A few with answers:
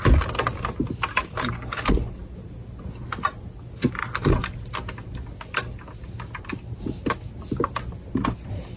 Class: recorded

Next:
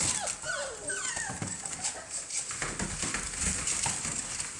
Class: recorded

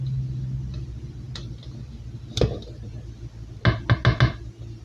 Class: recorded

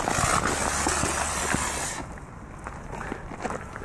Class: recorded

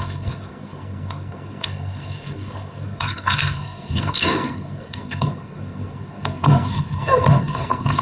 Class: remade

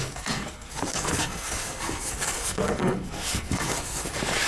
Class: remade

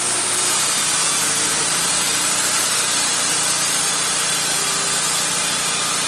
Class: recorded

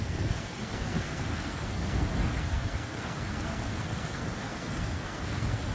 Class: remade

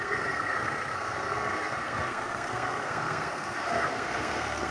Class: remade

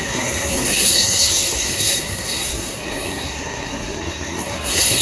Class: remade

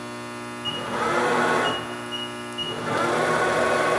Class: recorded